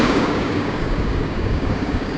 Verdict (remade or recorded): remade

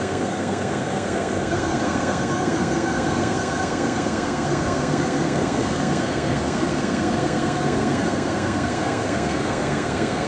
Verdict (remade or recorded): remade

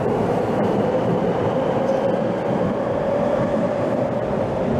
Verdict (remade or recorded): remade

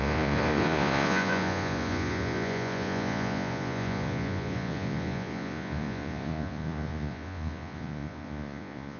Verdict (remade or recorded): remade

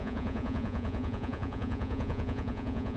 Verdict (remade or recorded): remade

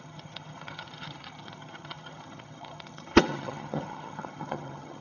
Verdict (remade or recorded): remade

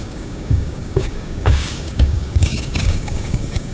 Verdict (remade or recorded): remade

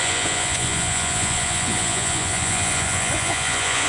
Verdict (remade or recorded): remade